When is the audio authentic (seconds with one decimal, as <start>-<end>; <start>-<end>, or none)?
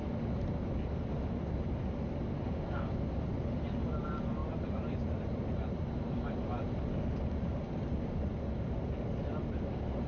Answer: 0.0-10.1